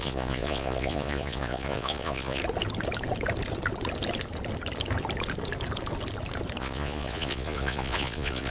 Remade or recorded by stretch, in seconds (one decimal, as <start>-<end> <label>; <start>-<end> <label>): 0.0-2.4 remade; 2.4-6.6 recorded; 6.6-8.5 remade